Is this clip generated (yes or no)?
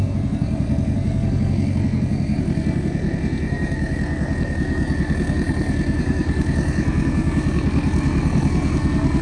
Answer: yes